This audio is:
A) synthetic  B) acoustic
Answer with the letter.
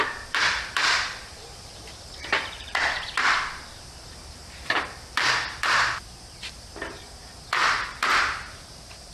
A